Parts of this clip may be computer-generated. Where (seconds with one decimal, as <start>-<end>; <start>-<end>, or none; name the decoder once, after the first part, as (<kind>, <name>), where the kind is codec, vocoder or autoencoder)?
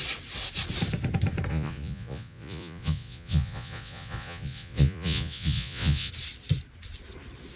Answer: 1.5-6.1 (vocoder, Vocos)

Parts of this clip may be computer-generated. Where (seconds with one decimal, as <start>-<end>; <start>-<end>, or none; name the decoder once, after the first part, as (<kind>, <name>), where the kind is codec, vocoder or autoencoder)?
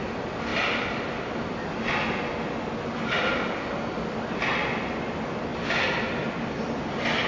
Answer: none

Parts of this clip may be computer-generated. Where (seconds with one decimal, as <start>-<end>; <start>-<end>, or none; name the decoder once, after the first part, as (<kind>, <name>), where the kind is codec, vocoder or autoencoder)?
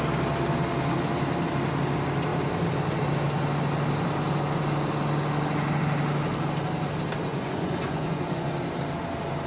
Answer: 7.3-8.5 (vocoder, Vocos)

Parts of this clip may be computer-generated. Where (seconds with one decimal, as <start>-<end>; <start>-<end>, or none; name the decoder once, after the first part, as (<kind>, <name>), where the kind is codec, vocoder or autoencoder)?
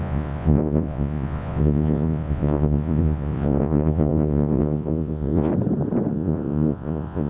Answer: 0.0-5.5 (vocoder, Vocos); 6.1-7.3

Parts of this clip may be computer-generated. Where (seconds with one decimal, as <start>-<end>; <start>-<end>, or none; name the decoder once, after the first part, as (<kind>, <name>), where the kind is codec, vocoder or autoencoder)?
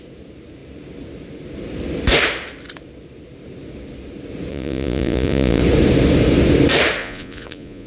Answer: 4.5-5.6 (vocoder, Vocos); 7.0-7.9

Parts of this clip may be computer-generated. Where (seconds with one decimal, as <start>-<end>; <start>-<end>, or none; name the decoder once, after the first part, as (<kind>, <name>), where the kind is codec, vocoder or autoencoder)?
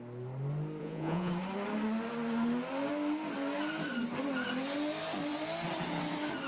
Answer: 0.8-1.3 (vocoder, Vocos)